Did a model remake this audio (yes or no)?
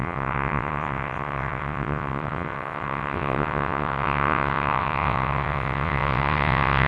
yes